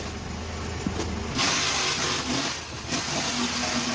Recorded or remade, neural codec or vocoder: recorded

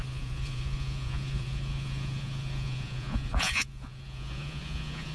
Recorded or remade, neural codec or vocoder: remade, vocoder, Vocos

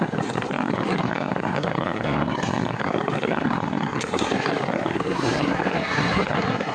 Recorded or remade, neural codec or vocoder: remade, codec, SNAC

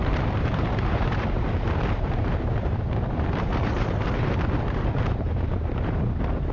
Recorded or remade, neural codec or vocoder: remade, vocoder, BigVGAN v2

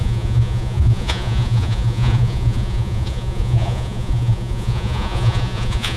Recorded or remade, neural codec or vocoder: remade, vocoder, Vocos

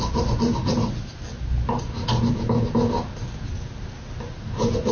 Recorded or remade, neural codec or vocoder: recorded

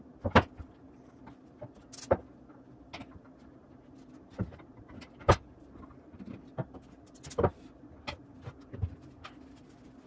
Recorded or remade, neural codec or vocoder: recorded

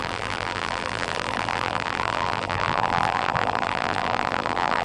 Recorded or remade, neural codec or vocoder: remade, vocoder, BigVGAN v2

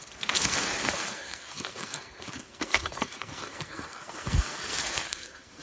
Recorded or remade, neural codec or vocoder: remade, codec, SNAC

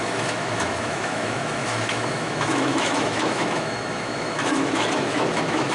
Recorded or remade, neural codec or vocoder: remade, autoencoder, DAC-VAE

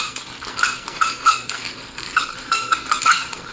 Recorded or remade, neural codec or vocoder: remade, codec, SNAC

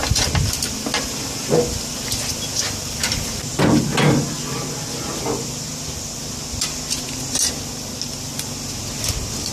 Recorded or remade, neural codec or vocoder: recorded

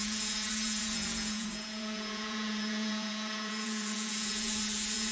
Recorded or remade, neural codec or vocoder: remade, vocoder, Vocos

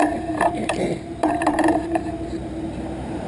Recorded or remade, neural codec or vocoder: remade, vocoder, BigVGAN v2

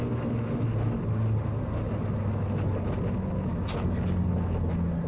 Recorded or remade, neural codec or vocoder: recorded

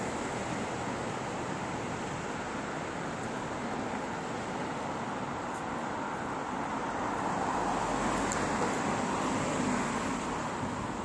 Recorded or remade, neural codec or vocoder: recorded